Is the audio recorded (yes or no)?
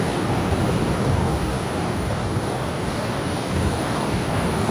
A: no